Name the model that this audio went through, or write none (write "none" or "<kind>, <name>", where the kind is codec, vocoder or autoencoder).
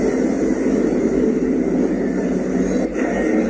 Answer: none